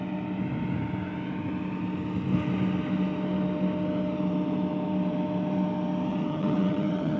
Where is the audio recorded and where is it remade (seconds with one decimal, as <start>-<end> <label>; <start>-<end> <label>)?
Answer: 0.0-6.1 recorded; 6.1-7.2 remade